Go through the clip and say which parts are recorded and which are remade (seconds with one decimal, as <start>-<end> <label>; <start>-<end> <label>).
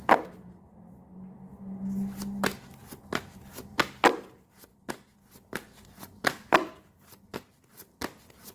0.0-8.5 recorded